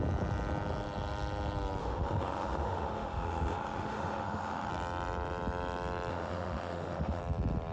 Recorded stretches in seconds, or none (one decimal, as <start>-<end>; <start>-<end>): 0.0-1.8; 4.7-6.1; 7.2-7.7